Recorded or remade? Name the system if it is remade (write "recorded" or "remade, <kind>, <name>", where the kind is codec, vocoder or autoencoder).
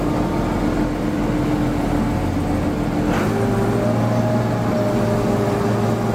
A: recorded